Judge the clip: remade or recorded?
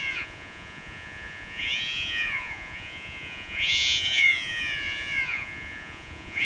remade